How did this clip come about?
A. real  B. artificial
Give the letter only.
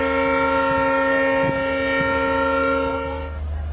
A